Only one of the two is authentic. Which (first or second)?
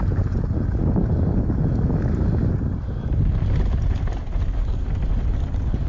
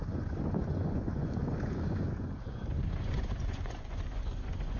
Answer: first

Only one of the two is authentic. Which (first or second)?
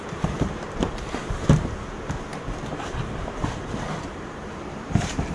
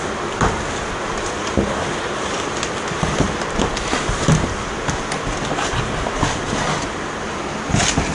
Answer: second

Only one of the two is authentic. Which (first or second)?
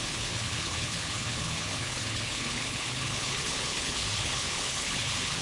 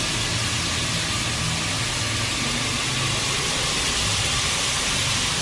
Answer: second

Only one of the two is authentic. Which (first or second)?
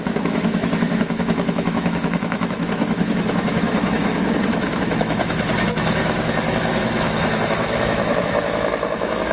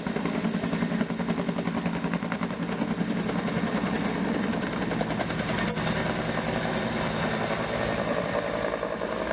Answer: second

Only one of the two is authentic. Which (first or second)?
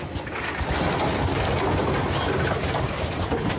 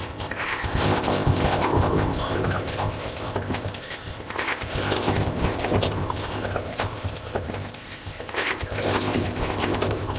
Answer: first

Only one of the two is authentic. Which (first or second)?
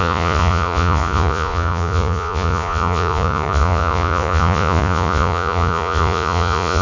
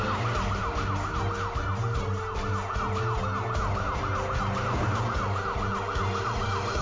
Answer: second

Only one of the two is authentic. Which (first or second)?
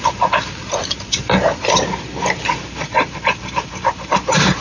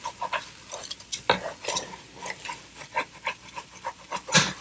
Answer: second